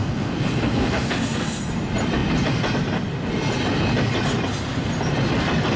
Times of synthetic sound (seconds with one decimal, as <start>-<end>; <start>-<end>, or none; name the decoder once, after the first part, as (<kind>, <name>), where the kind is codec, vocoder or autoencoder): 0.0-1.6 (codec, SNAC)